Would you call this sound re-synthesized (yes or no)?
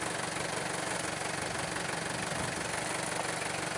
no